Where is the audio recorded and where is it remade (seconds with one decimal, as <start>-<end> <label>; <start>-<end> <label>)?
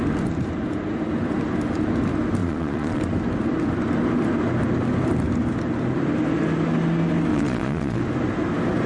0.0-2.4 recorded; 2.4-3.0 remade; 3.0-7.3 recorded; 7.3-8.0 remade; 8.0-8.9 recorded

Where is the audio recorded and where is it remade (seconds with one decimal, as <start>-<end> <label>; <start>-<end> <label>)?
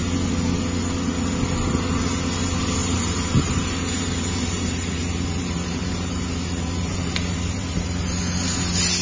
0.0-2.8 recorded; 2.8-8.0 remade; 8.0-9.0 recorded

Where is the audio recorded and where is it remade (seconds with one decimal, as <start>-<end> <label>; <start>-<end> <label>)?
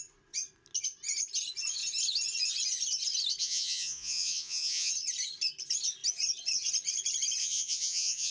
0.0-3.4 recorded; 3.4-4.9 remade; 4.9-7.4 recorded; 7.4-8.3 remade